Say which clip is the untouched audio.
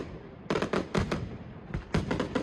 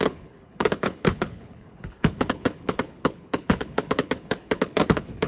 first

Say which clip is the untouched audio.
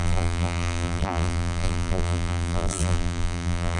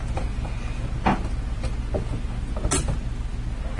second